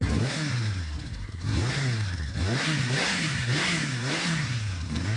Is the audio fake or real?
fake